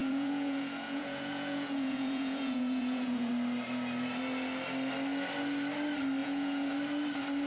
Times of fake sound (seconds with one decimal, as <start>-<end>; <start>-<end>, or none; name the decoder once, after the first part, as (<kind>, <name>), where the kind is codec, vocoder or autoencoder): 0.0-3.3 (vocoder, Vocos); 6.2-6.7